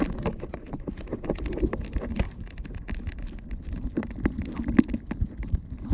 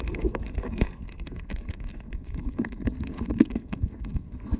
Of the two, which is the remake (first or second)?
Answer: second